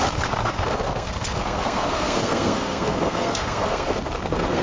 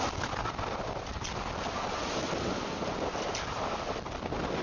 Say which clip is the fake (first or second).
first